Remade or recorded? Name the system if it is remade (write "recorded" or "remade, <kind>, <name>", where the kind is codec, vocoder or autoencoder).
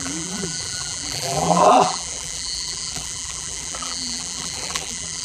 remade, vocoder, BigVGAN v2